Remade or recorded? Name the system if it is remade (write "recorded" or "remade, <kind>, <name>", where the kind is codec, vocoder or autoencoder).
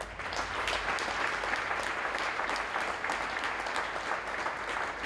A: recorded